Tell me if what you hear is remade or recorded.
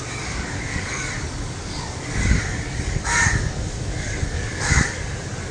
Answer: remade